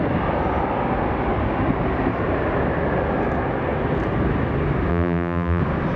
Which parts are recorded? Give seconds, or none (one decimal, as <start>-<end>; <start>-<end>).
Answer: 0.0-4.9; 5.6-6.0